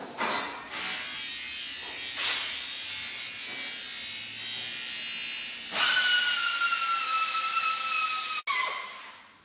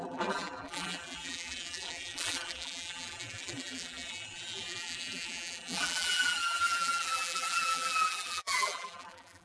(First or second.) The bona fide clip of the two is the first